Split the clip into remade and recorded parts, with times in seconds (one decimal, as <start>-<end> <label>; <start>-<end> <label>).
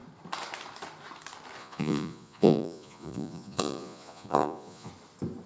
0.0-1.6 recorded; 1.6-4.9 remade; 4.9-5.5 recorded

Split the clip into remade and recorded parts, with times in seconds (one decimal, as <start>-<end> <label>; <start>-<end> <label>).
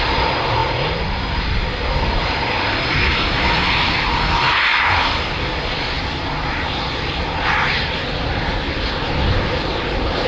0.0-10.3 recorded